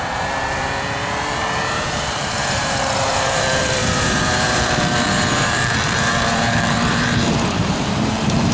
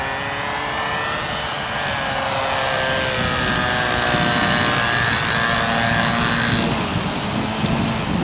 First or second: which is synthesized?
first